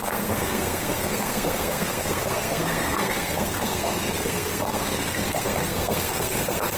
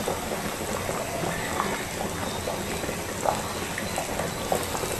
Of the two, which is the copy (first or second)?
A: first